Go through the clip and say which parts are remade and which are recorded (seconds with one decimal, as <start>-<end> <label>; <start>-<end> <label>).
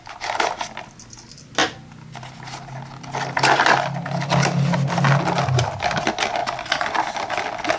0.0-7.8 recorded